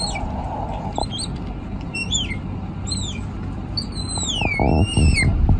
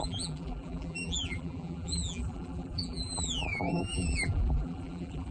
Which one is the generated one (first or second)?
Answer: second